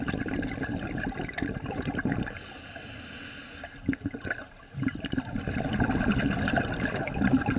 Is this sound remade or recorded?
recorded